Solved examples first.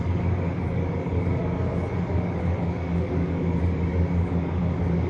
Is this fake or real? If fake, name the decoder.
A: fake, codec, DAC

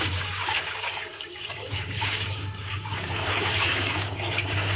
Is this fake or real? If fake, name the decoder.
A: fake, codec, DAC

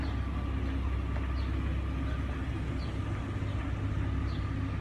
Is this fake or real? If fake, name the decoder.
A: real